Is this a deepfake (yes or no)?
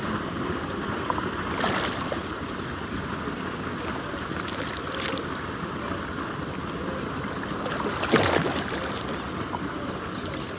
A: no